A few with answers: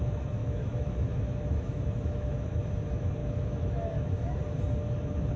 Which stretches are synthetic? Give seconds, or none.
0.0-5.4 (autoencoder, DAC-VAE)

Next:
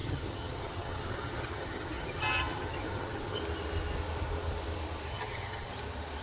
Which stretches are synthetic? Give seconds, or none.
0.0-3.4 (vocoder, HiFi-GAN); 5.1-5.7

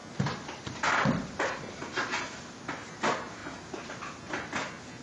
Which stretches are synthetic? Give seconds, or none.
none

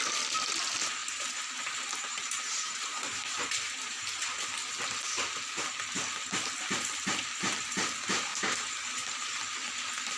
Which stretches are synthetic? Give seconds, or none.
1.0-4.5 (vocoder, BigVGAN v2); 8.3-9.4